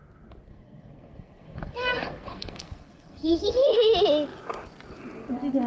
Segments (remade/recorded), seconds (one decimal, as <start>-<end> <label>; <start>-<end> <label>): 0.0-0.5 recorded; 0.5-3.9 remade; 3.9-5.7 recorded